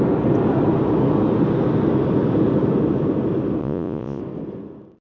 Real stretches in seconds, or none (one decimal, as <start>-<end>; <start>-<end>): 0.0-3.6; 4.2-5.0